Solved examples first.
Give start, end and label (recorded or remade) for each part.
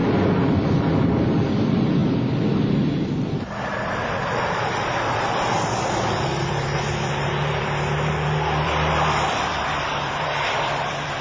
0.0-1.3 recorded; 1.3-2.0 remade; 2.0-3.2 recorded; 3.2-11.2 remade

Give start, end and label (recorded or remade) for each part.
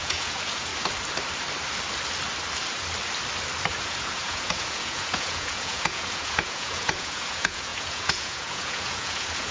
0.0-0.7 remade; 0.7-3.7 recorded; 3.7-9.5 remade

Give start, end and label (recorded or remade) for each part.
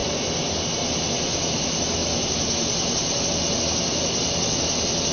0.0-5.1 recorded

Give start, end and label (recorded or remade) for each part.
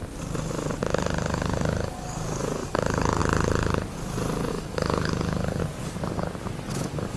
0.0-1.3 recorded; 1.3-3.2 remade; 3.2-4.5 recorded; 4.5-5.6 remade; 5.6-6.7 recorded; 6.7-7.2 remade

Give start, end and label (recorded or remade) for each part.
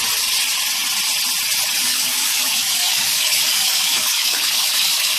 0.0-1.9 recorded; 1.9-5.2 remade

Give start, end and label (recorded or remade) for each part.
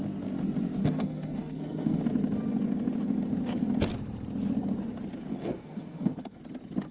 0.0-0.8 recorded; 0.8-2.0 remade; 2.0-5.3 recorded; 5.3-6.4 remade; 6.4-6.9 recorded